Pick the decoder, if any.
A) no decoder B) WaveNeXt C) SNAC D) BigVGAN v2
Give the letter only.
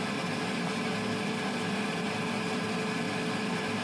A